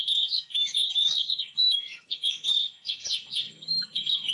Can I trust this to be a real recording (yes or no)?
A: no